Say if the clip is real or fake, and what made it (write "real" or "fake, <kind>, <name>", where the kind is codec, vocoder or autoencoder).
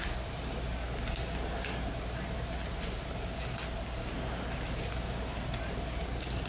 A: real